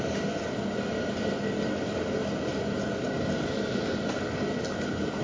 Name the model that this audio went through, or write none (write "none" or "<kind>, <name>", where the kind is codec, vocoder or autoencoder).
none